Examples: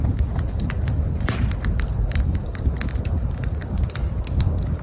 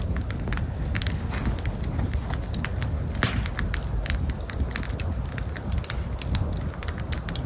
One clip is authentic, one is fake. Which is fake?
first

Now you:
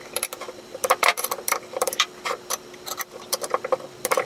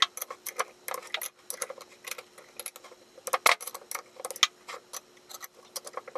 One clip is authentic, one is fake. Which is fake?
first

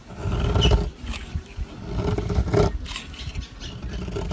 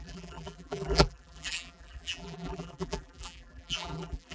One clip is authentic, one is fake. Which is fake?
second